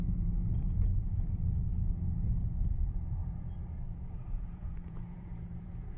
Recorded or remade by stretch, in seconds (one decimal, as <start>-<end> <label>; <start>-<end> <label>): 0.0-3.2 remade; 3.2-3.8 recorded; 3.8-6.0 remade